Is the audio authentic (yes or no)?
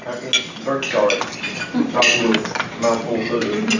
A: yes